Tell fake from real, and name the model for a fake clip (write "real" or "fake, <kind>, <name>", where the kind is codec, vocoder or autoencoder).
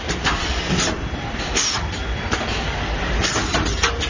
fake, vocoder, BigVGAN v2